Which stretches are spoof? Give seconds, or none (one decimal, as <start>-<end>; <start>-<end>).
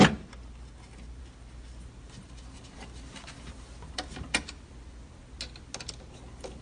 none